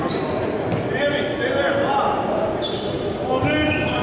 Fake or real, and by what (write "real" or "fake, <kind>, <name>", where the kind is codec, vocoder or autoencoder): real